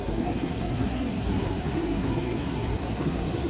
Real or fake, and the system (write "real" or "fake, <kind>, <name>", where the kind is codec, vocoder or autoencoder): fake, codec, SNAC